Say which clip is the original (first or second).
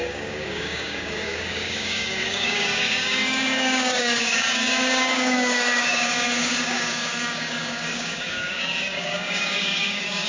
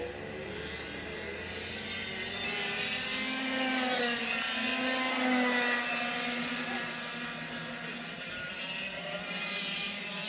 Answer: second